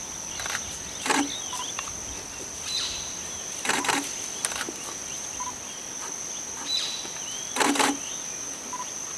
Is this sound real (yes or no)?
yes